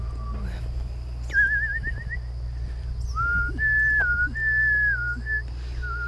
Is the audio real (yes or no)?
yes